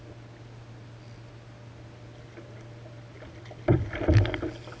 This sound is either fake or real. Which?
real